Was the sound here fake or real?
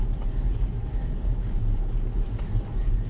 fake